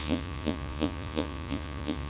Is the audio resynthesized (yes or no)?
yes